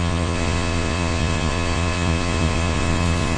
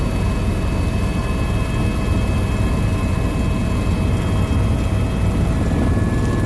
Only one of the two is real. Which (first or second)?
second